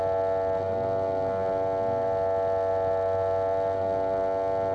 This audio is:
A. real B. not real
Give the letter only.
A